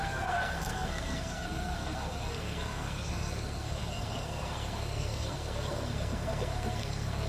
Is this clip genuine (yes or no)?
no